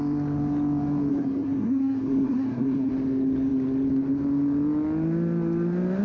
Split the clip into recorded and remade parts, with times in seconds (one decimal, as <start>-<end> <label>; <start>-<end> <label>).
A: 0.0-1.1 recorded; 1.1-2.9 remade; 2.9-6.0 recorded